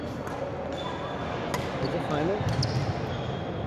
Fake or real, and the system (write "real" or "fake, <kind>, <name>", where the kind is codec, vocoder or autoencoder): real